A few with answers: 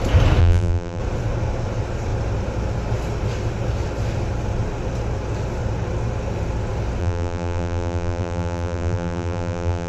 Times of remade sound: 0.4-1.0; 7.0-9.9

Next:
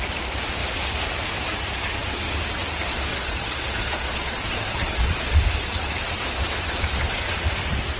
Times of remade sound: 3.1-5.4

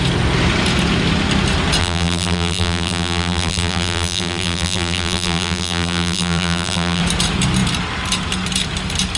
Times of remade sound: 1.8-7.0